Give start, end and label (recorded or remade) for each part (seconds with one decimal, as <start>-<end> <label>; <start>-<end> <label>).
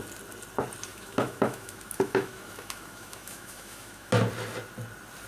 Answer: 0.0-0.9 recorded; 0.9-4.1 remade; 4.1-5.3 recorded